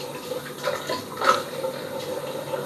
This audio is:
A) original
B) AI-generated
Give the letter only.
A